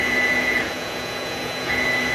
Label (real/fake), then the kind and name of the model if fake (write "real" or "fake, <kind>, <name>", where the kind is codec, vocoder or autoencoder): fake, vocoder, Vocos